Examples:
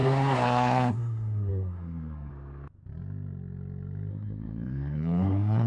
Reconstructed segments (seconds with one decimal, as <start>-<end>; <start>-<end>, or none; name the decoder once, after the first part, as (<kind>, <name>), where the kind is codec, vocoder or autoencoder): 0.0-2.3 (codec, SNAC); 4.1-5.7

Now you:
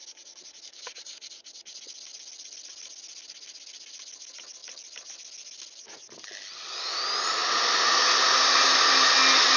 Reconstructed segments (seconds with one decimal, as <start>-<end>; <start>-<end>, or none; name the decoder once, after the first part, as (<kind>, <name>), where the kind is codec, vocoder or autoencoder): none

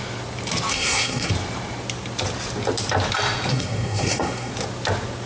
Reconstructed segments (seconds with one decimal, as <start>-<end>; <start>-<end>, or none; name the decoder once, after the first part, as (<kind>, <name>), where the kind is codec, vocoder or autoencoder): 0.7-1.3 (codec, SNAC); 3.5-4.5

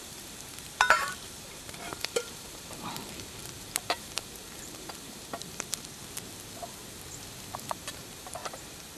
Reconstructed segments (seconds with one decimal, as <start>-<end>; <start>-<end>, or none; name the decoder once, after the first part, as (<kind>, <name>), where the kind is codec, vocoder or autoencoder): 0.0-6.0 (vocoder, BigVGAN v2); 7.7-9.0

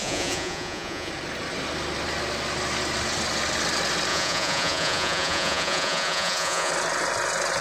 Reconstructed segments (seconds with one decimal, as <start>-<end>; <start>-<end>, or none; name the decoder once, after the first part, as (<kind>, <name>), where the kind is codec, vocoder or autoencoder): 0.0-1.1 (vocoder, Vocos); 4.1-6.7

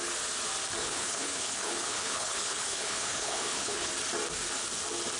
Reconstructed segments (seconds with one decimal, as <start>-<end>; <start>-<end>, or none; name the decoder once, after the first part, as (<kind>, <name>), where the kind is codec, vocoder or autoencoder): 0.8-3.9 (codec, HILCodec)

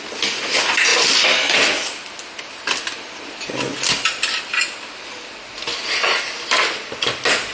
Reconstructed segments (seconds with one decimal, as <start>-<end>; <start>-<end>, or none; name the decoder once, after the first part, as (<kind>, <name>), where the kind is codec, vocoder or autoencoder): none